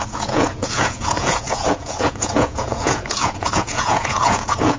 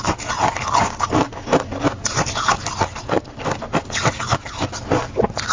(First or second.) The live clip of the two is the second